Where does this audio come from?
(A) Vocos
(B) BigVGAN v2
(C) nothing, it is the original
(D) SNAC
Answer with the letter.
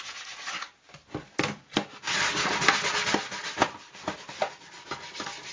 C